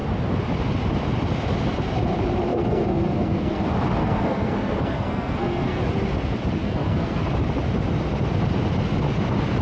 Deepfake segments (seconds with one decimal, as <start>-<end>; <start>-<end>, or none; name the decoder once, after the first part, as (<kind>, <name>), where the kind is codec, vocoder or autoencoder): 2.5-3.6 (codec, SNAC); 4.0-5.8; 6.6-7.2